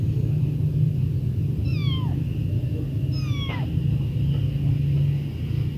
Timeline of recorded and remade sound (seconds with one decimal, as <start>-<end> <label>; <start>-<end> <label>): 0.0-5.8 recorded